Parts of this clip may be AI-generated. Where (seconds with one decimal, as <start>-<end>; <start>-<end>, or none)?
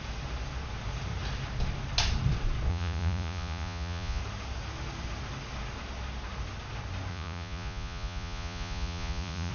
2.7-4.2; 7.1-9.5